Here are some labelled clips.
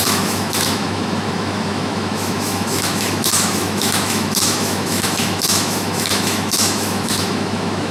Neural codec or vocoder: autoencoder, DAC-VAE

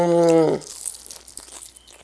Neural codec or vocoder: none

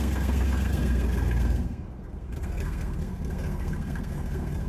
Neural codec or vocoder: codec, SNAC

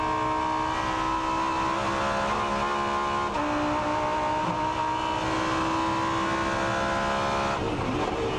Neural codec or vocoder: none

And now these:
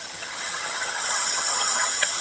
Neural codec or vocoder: vocoder, HiFi-GAN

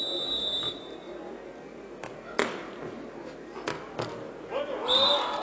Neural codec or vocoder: none